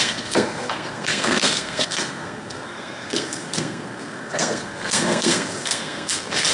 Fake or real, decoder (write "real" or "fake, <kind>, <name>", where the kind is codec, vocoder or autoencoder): fake, codec, SNAC